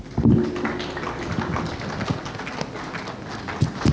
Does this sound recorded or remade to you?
recorded